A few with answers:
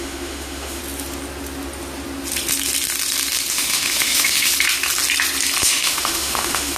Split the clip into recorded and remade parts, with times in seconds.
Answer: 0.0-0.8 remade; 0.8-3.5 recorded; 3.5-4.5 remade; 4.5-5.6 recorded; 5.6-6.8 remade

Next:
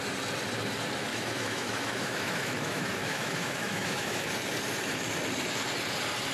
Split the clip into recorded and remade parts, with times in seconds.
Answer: 0.0-1.1 recorded; 1.1-4.3 remade; 4.3-6.3 recorded